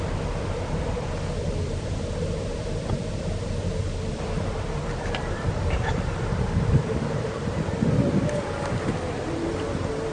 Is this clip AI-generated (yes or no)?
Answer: yes